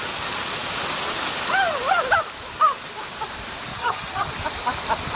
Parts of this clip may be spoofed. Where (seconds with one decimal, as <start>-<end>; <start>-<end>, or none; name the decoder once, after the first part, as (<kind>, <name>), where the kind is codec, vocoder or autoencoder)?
3.7-4.3 (vocoder, HiFi-GAN)